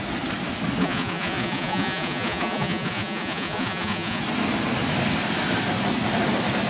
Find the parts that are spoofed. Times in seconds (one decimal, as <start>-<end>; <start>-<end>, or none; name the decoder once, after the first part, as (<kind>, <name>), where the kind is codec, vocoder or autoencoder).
0.8-4.2 (vocoder, Vocos)